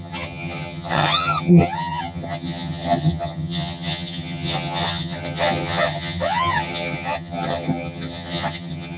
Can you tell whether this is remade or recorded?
remade